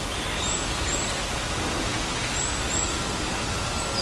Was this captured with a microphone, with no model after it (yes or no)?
yes